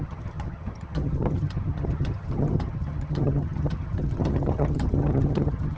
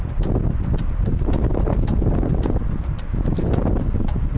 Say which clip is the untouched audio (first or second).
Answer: second